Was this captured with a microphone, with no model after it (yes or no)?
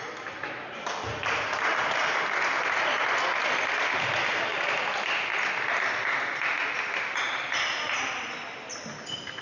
yes